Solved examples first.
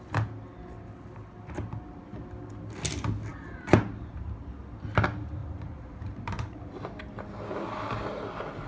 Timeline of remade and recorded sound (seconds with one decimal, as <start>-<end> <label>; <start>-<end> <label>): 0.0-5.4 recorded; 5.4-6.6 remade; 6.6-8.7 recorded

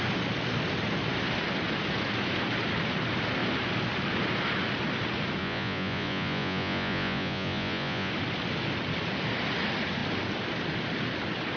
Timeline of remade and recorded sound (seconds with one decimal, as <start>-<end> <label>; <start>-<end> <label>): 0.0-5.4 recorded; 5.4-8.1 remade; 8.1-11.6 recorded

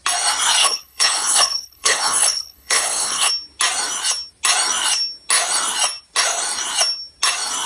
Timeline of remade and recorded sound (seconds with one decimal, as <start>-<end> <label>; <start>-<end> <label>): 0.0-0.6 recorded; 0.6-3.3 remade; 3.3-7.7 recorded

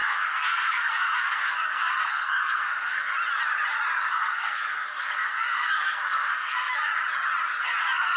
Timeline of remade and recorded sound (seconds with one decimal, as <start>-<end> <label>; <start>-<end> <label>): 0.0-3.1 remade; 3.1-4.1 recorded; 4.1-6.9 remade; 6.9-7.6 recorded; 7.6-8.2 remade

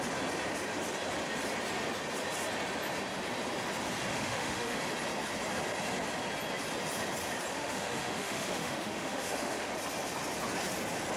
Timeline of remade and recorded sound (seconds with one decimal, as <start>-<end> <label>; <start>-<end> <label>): 0.0-4.1 recorded; 4.1-4.8 remade; 4.8-7.5 recorded; 7.5-9.7 remade; 9.7-11.2 recorded

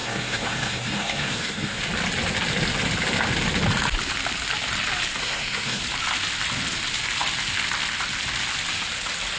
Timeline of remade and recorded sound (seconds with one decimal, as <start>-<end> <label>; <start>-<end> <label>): 0.0-1.8 remade; 1.8-5.2 recorded; 5.2-5.8 remade; 5.8-9.4 recorded